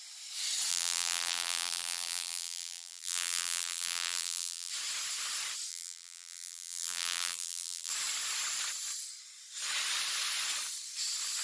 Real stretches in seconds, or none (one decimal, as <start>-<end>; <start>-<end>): 0.0-0.7; 4.7-5.7; 7.9-11.4